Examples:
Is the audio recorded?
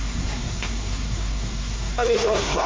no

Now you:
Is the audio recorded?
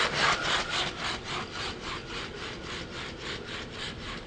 yes